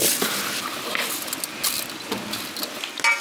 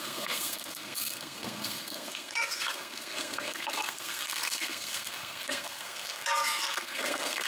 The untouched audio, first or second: first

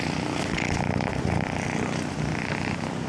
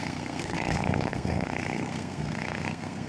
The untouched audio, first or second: first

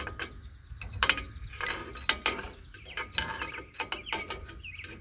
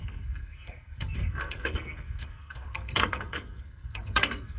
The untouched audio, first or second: first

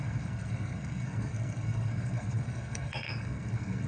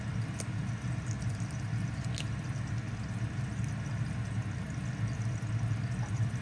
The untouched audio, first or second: second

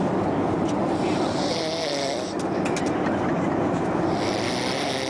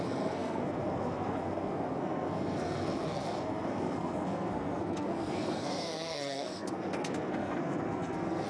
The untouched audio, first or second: first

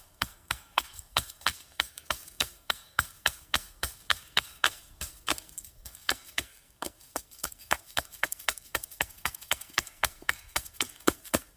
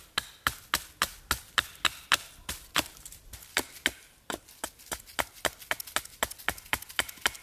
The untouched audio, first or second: second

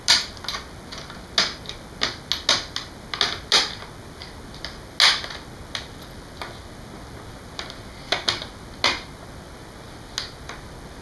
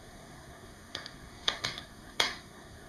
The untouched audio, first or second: first